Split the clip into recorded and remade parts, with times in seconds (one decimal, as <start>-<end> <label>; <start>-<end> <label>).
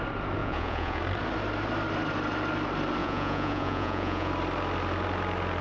0.0-0.4 recorded; 0.4-1.0 remade; 1.0-3.0 recorded; 3.0-4.3 remade; 4.3-5.6 recorded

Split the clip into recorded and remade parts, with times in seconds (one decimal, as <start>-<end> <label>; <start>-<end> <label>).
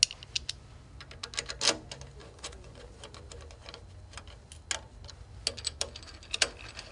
0.0-2.2 recorded; 2.2-2.8 remade; 2.8-6.9 recorded